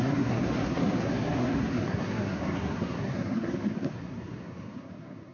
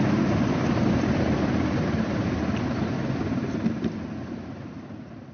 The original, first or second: second